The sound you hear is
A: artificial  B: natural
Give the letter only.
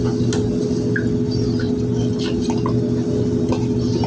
B